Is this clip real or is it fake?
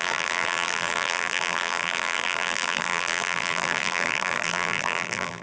fake